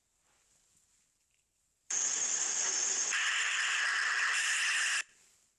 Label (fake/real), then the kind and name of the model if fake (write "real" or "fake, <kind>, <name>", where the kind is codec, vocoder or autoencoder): fake, vocoder, BigVGAN v2